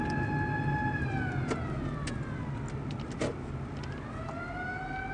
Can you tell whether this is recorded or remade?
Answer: recorded